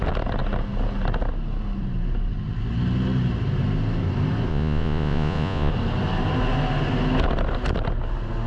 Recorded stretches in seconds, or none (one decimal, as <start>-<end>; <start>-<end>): 0.0-4.5; 5.7-8.5